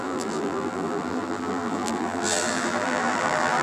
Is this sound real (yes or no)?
no